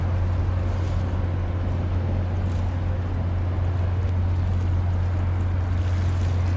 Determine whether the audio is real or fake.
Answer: real